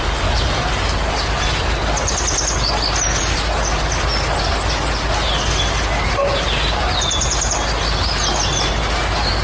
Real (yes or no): yes